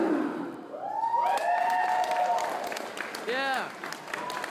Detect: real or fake real